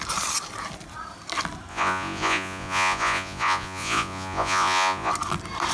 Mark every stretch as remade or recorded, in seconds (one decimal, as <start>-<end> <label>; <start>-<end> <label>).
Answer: 0.0-1.7 recorded; 1.7-5.1 remade; 5.1-5.7 recorded